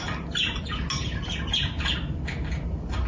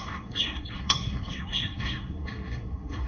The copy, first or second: second